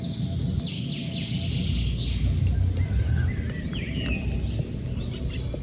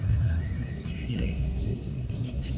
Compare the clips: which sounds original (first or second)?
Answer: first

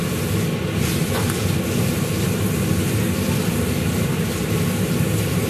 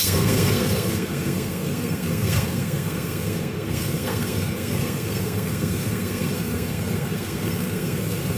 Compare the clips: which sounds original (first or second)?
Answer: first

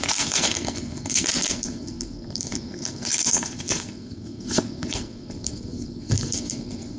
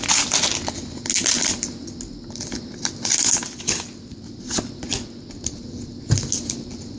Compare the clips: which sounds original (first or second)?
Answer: second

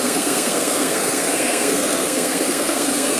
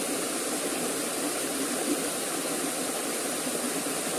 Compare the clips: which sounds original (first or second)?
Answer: second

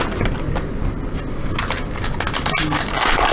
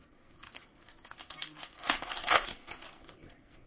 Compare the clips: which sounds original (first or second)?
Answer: first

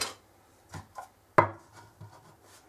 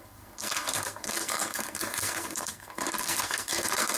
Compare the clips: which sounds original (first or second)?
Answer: first